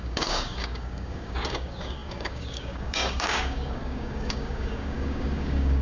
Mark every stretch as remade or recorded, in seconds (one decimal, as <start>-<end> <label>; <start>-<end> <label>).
0.0-5.8 remade